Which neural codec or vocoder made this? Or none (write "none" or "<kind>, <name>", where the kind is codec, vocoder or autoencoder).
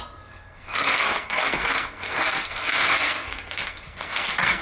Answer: codec, SNAC